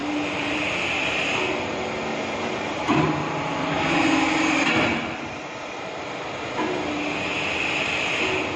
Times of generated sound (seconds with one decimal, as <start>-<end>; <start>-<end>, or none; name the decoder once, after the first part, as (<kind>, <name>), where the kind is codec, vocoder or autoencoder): 0.0-1.4 (vocoder, BigVGAN v2); 2.1-5.4